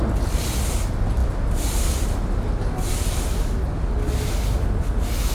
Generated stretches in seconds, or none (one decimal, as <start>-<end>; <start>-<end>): none